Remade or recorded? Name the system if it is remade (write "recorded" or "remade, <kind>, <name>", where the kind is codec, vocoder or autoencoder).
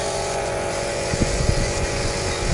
remade, vocoder, Vocos